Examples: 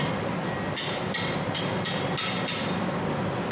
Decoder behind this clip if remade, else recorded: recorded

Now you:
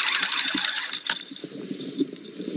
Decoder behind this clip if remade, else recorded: remade, vocoder, BigVGAN v2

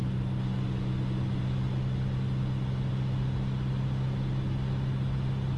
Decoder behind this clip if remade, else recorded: recorded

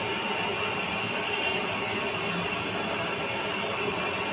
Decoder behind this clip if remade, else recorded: recorded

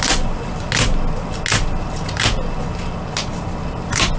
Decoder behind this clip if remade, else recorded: recorded